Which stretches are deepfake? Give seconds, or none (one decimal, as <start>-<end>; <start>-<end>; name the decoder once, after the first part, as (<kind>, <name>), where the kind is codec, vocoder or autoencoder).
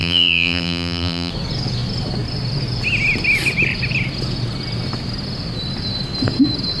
0.0-1.3 (vocoder, BigVGAN v2)